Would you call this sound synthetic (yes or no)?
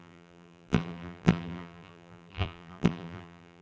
yes